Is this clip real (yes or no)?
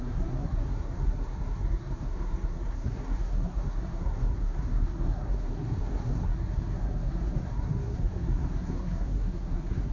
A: no